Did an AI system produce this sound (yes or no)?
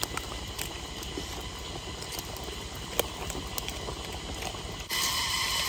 no